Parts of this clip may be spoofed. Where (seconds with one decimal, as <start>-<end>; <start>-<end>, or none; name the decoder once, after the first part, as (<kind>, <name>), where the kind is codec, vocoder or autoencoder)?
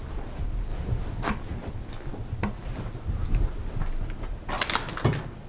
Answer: none